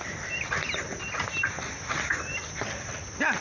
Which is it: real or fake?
real